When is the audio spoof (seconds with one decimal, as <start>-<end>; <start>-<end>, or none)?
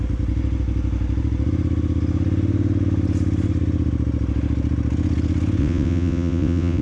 5.6-6.8